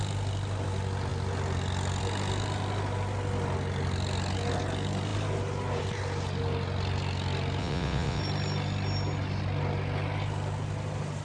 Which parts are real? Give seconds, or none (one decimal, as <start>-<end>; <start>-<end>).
0.0-7.6; 8.2-11.2